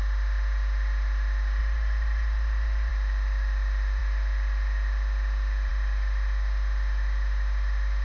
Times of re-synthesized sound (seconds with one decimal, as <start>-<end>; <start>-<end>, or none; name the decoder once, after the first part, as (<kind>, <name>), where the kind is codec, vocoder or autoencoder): 1.6-2.9 (vocoder, BigVGAN v2)